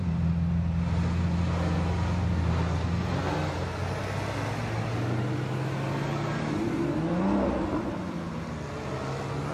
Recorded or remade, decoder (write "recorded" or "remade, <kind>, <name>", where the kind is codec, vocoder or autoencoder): recorded